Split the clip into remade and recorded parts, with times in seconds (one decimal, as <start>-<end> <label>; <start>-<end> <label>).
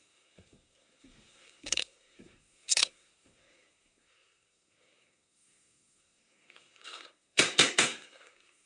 0.0-8.7 remade